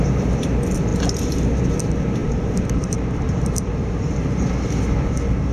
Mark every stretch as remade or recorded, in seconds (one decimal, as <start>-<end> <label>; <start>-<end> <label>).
0.0-2.2 recorded; 2.2-4.5 remade; 4.5-5.5 recorded